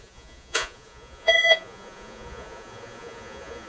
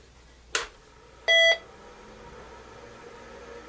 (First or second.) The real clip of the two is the second